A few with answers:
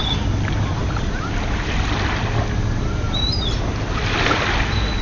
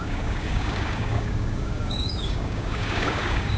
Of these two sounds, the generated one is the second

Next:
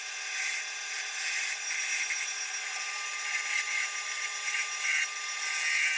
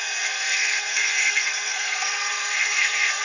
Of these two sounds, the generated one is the second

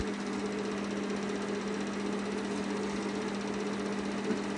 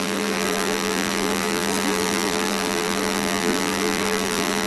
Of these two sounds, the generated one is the second